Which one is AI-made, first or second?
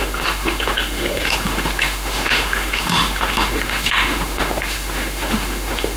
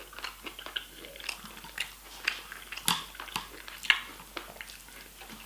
first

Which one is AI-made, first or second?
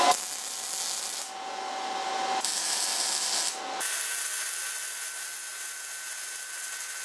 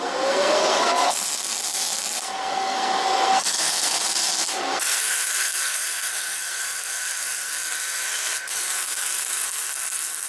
second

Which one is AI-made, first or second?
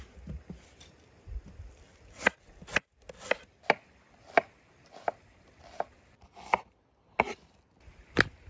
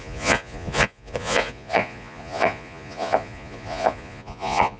second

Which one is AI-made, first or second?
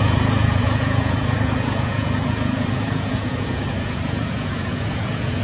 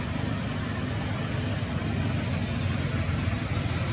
first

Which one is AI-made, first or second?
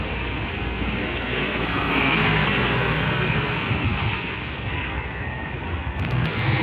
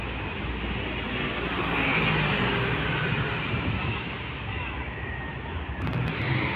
first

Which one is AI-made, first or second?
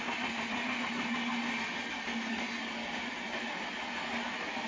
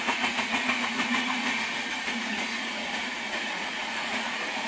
second